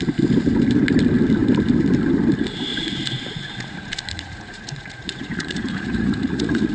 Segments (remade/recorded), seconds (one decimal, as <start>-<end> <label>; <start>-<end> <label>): 0.0-2.7 recorded; 2.7-6.7 remade